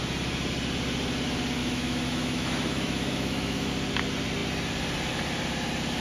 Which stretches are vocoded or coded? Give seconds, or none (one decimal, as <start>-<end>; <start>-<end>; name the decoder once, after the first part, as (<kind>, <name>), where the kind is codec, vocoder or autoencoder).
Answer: 1.6-3.7 (autoencoder, DAC-VAE)